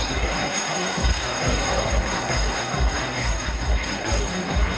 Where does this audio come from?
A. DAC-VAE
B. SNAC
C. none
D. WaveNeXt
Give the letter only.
B